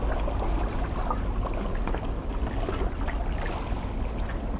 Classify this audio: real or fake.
real